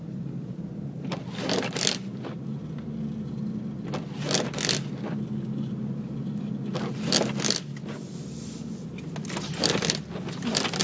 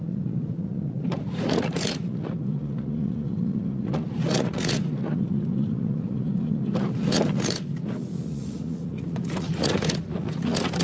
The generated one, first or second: second